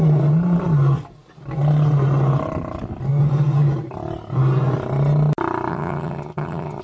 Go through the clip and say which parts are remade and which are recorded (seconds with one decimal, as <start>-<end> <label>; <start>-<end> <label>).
0.0-5.7 recorded; 5.7-6.8 remade